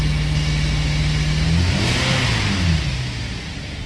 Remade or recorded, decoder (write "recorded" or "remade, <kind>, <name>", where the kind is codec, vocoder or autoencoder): recorded